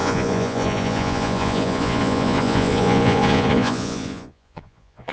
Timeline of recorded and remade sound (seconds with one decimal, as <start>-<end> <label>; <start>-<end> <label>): 0.0-5.1 remade